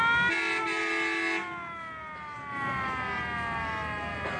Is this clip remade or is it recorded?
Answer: recorded